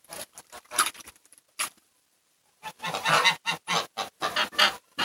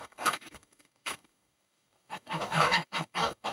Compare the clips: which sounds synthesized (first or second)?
second